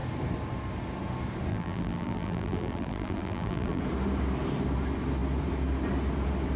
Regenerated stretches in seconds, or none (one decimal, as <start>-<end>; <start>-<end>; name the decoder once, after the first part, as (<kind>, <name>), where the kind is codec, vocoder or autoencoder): 1.5-3.8 (vocoder, BigVGAN v2)